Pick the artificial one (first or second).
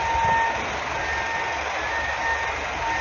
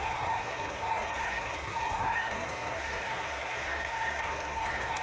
second